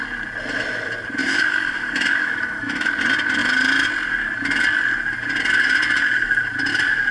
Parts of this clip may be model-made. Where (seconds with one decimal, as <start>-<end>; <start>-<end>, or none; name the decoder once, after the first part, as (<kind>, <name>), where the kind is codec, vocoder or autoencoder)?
1.2-2.9 (autoencoder, DAC-VAE)